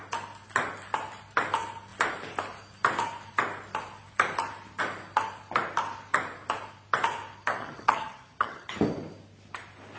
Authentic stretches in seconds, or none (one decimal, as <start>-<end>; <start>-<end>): 0.0-7.6; 8.8-10.0